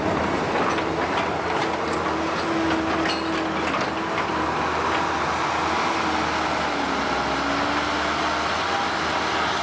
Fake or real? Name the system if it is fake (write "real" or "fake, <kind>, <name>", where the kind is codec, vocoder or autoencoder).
real